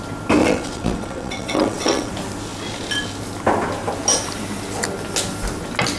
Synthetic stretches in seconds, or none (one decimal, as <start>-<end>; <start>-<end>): 0.4-2.1